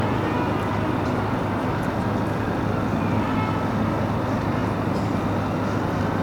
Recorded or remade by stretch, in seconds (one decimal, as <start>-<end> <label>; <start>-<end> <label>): 0.0-6.2 recorded